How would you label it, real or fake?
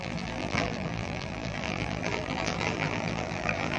fake